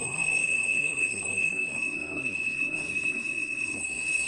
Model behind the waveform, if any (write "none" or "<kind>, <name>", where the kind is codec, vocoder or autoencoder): codec, SNAC